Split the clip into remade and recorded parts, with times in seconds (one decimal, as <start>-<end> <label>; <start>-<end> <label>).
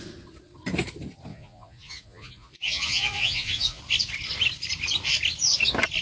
0.0-1.3 recorded; 1.3-3.8 remade; 3.8-6.0 recorded